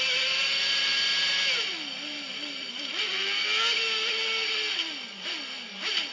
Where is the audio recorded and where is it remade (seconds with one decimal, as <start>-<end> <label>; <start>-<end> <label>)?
0.0-0.9 remade; 0.9-1.9 recorded; 1.9-3.0 remade; 3.0-6.1 recorded